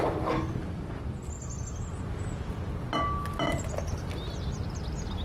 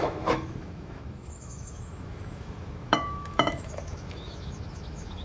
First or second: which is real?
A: first